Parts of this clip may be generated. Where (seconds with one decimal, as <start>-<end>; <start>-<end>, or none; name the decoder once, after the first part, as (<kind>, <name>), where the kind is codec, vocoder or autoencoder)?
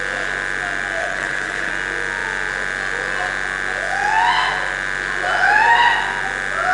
1.0-1.7 (codec, HILCodec)